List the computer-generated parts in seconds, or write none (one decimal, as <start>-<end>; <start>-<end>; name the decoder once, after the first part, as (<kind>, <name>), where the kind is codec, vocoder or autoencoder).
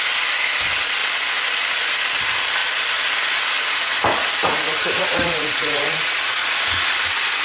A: 4.4-6.9 (vocoder, Vocos)